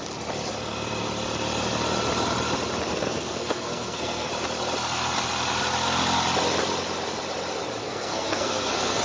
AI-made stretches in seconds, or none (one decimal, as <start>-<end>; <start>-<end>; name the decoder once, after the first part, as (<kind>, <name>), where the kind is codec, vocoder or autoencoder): 3.0-4.3 (codec, SNAC); 7.8-9.0